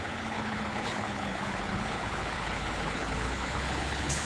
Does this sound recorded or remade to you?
remade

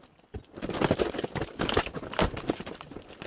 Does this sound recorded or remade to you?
remade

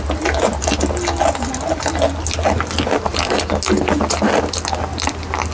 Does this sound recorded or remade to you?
recorded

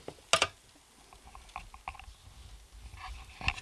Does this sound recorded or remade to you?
recorded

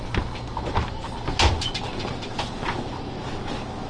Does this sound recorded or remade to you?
recorded